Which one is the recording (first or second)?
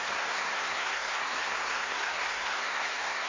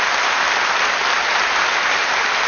second